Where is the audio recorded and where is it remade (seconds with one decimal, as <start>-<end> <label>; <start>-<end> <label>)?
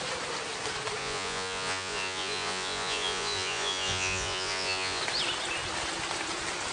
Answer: 0.0-1.0 recorded; 1.0-5.0 remade; 5.0-6.7 recorded